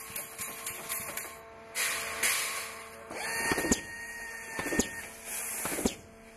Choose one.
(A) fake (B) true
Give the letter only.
B